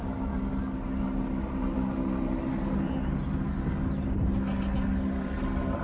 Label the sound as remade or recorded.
recorded